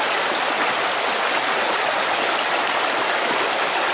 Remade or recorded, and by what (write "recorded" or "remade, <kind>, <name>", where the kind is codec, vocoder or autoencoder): recorded